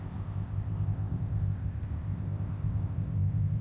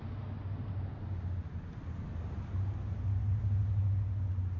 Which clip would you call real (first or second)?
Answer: second